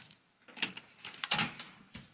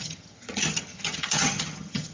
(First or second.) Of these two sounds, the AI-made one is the second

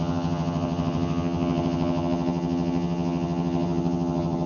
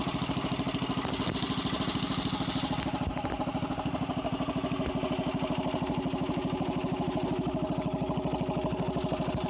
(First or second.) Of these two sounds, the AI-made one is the first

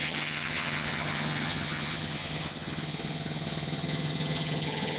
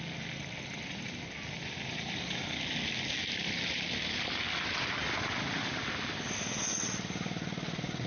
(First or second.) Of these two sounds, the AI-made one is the first